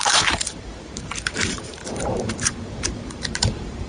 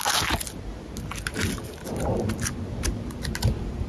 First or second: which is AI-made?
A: first